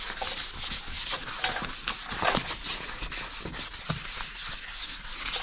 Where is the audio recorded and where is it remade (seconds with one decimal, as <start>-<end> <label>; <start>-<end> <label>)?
0.0-5.4 recorded